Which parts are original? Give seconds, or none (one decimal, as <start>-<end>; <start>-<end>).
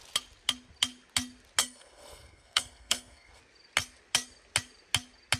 0.0-1.6; 3.4-5.4